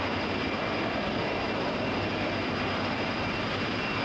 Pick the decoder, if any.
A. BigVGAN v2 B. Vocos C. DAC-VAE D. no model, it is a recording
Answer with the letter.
D